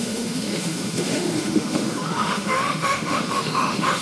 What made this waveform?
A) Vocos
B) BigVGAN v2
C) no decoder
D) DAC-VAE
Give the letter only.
D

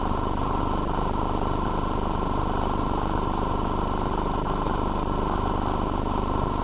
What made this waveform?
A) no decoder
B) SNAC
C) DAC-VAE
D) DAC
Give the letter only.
A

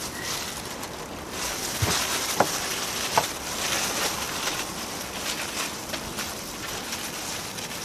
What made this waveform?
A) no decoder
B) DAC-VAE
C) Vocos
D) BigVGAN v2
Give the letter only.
A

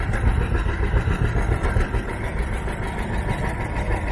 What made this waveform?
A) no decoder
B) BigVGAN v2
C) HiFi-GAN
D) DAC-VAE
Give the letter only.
A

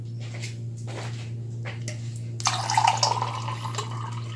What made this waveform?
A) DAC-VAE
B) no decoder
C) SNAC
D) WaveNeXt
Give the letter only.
B